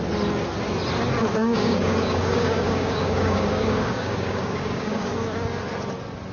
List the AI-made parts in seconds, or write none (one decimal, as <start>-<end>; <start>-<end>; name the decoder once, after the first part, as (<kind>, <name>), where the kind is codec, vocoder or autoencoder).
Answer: 1.3-5.1 (codec, DAC)